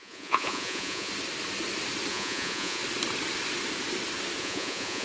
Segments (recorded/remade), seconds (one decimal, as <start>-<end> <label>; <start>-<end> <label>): 0.0-1.1 remade; 1.1-2.1 recorded; 2.1-2.8 remade; 2.8-4.4 recorded; 4.4-5.0 remade